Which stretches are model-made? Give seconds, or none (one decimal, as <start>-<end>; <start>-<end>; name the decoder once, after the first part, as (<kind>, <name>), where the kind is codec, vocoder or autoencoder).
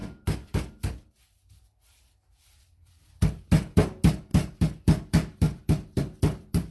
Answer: 0.0-3.1 (vocoder, BigVGAN v2); 4.3-6.7